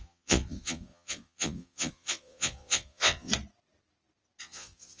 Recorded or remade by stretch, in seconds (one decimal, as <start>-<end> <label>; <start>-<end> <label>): 0.0-3.3 remade; 3.3-4.4 recorded; 4.4-5.0 remade